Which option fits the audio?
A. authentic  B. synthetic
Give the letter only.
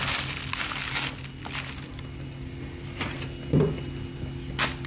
A